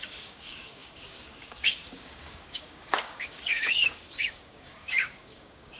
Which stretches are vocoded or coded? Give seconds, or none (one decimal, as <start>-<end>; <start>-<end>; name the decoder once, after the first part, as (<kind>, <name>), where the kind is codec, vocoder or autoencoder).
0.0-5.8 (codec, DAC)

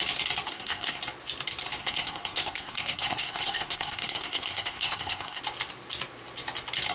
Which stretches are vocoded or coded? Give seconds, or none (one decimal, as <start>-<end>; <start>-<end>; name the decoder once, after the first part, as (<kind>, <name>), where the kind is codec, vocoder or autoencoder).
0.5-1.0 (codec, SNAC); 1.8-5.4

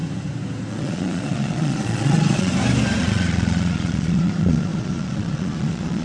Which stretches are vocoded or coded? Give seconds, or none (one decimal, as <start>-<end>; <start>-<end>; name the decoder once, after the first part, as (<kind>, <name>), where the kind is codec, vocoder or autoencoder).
0.7-2.5 (vocoder, Vocos); 3.0-6.0